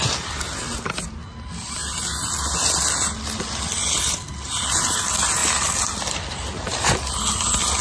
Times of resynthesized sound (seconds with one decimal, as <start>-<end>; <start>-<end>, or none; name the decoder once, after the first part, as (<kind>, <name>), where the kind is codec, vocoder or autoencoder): none